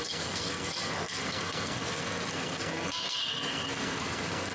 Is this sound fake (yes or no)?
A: yes